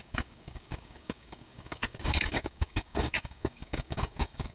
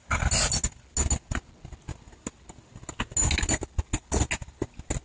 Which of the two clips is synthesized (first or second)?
first